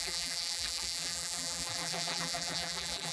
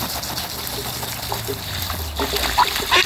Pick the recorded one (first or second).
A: second